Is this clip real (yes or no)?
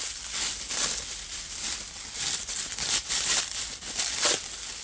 yes